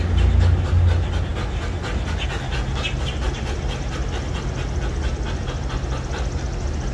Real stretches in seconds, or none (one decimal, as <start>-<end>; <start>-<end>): 0.0-6.9